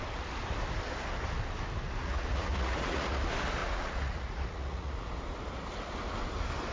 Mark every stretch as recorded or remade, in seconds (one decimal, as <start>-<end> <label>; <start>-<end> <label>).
0.0-2.0 recorded; 2.0-3.2 remade; 3.2-3.6 recorded; 3.6-5.0 remade; 5.0-6.7 recorded